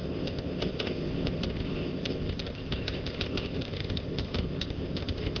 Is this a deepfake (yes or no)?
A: yes